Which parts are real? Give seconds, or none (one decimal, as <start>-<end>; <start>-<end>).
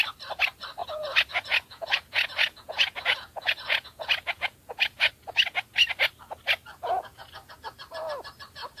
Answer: 0.0-0.8; 5.1-6.7; 7.5-8.8